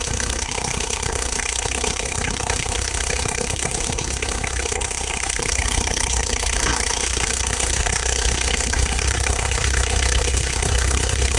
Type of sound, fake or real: fake